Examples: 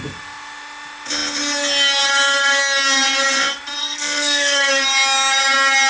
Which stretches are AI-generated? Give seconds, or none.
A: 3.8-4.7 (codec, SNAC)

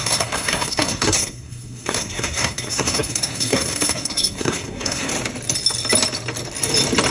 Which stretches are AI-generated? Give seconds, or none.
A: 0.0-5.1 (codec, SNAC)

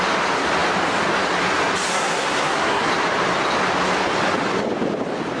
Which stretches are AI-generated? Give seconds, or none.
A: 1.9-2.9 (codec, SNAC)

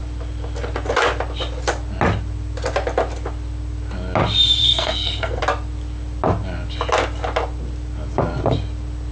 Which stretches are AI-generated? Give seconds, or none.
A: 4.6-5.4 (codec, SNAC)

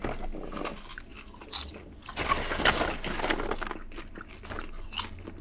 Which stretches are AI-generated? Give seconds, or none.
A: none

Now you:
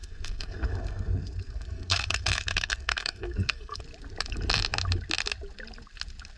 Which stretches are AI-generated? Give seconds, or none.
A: 0.0-3.8 (codec, SNAC)

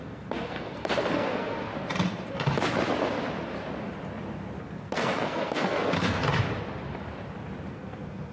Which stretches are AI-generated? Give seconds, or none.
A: 0.0-1.7 (codec, SNAC); 4.6-6.2; 7.7-8.3

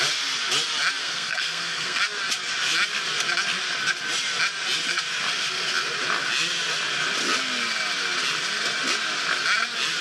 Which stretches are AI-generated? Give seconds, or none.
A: 1.0-2.0 (codec, SNAC)